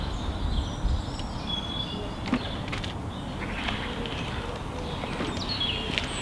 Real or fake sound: real